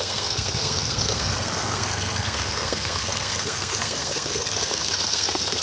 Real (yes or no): no